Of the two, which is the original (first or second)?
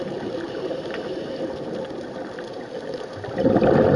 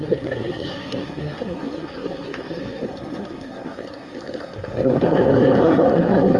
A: first